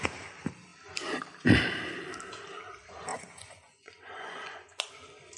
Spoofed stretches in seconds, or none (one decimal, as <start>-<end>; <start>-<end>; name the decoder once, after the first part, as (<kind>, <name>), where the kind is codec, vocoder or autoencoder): 3.1-5.4 (vocoder, Vocos)

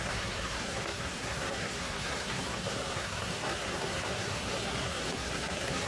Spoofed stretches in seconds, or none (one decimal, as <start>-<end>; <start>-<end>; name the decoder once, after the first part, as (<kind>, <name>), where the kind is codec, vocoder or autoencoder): 0.0-5.9 (codec, SNAC)